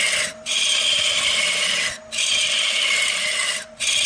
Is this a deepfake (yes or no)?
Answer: no